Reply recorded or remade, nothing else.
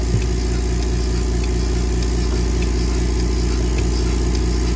recorded